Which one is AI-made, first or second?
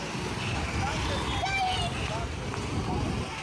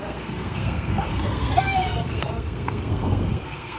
second